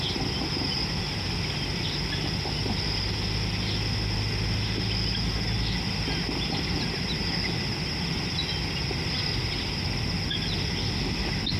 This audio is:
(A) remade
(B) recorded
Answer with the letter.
B